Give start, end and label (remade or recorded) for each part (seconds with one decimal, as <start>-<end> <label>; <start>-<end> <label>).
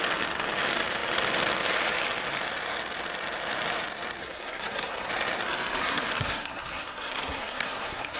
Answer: 0.0-4.2 recorded; 4.2-5.1 remade; 5.1-5.8 recorded; 5.8-8.2 remade